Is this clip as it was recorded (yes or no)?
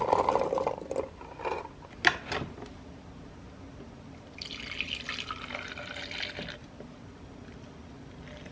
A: yes